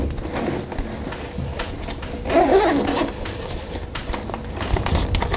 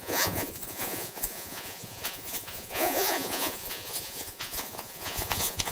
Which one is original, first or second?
first